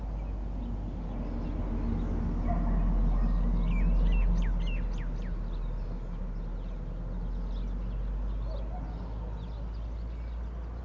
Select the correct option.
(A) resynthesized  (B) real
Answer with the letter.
B